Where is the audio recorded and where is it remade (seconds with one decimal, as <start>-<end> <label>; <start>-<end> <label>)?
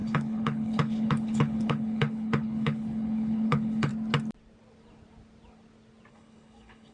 0.0-3.9 remade; 3.9-6.1 recorded; 6.1-6.9 remade